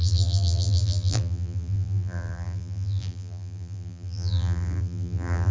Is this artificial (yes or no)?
yes